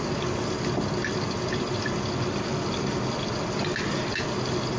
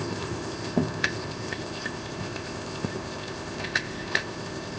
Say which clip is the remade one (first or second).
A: second